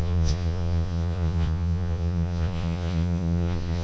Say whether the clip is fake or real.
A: fake